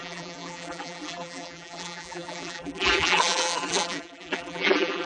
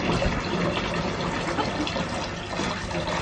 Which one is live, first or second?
second